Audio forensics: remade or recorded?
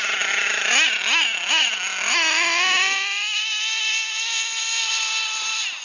recorded